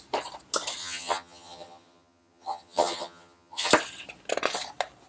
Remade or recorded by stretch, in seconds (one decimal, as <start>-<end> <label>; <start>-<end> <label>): 0.0-0.8 recorded; 0.8-3.7 remade; 3.7-5.1 recorded